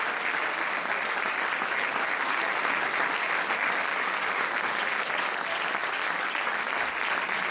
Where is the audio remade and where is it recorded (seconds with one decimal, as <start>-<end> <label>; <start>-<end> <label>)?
0.0-3.9 recorded; 3.9-5.1 remade; 5.1-7.5 recorded